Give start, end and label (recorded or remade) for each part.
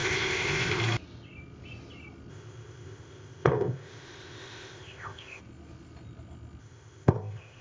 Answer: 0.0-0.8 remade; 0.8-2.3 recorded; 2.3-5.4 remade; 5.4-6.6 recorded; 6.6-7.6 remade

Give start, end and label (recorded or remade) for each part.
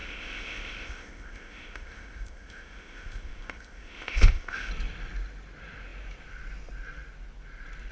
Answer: 0.0-4.7 remade; 4.7-7.9 recorded